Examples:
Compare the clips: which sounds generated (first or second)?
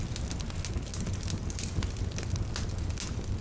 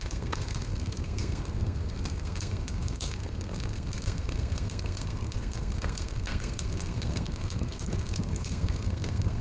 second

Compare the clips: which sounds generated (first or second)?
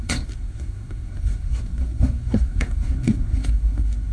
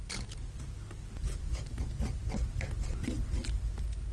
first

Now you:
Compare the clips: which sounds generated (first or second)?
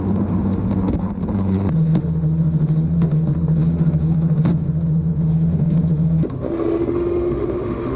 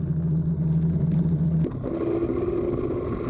first